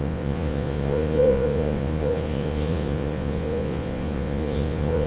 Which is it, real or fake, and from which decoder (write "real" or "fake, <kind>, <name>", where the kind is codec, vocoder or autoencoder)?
fake, vocoder, Vocos